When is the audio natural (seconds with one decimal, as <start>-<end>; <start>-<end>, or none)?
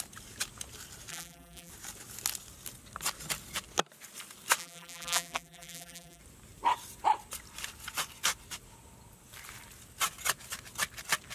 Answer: 0.0-1.1; 1.7-4.6; 6.2-11.3